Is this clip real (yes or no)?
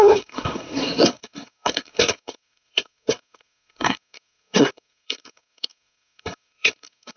no